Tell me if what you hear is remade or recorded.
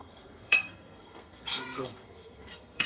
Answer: remade